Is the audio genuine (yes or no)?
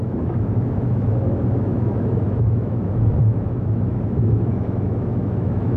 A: no